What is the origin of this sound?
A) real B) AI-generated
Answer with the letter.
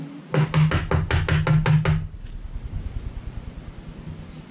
A